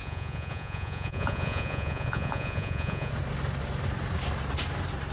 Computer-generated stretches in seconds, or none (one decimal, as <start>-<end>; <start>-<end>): 0.0-3.1